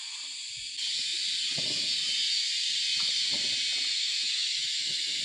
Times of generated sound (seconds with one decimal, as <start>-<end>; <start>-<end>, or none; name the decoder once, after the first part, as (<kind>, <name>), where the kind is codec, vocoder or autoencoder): 3.9-5.2 (autoencoder, DAC-VAE)